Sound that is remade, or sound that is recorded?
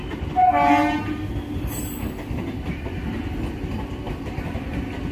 recorded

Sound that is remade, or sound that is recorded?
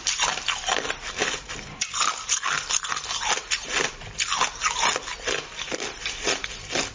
recorded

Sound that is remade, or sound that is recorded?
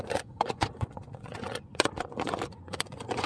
remade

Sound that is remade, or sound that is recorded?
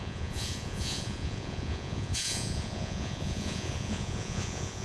remade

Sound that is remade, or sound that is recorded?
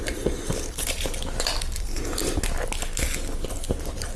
recorded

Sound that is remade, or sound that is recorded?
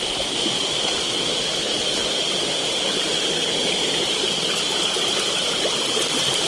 recorded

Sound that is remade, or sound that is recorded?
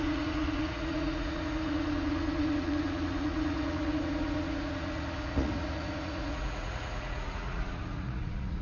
remade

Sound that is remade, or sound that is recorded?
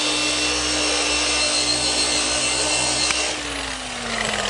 recorded